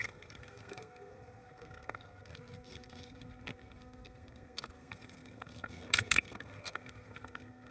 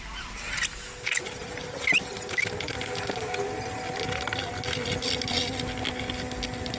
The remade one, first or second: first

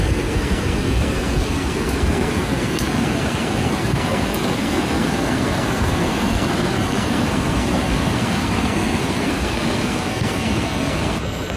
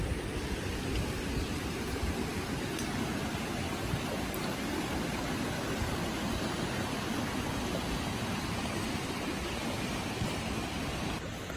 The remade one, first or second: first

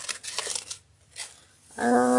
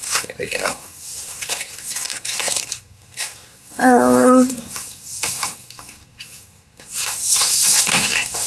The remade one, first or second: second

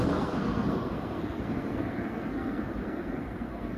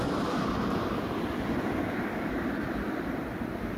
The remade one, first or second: first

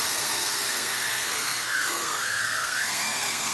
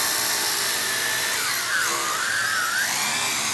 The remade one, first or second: first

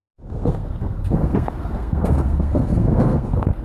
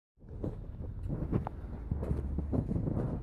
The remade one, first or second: first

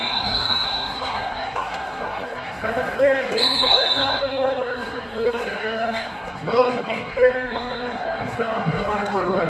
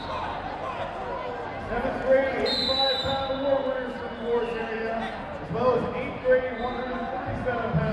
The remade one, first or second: first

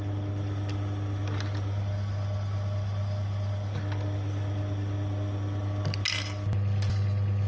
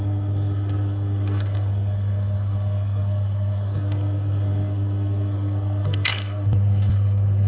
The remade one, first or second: second